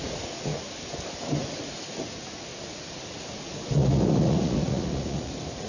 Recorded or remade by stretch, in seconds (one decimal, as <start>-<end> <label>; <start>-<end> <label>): 0.0-0.5 remade; 0.5-1.4 recorded; 1.4-5.7 remade